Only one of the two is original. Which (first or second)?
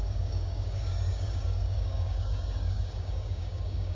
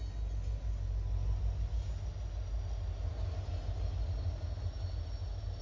second